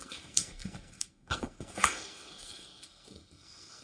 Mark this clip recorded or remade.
remade